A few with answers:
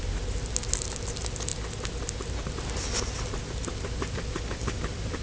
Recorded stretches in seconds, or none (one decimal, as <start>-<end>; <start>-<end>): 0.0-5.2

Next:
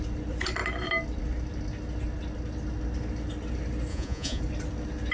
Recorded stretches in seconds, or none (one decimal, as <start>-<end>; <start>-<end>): 0.0-3.9; 4.4-5.1

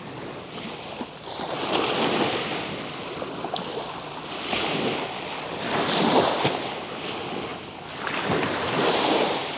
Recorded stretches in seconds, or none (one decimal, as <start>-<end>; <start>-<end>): 0.0-9.6